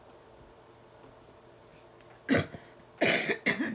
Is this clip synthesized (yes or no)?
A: no